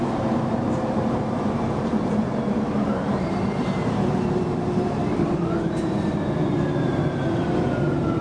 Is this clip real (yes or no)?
no